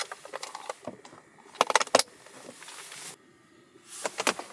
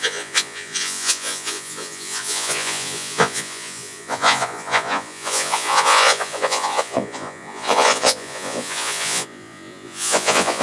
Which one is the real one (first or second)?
first